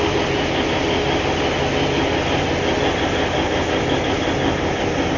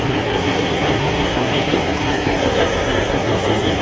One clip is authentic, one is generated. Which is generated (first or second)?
second